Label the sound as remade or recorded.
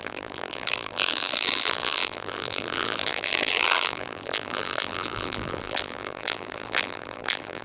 remade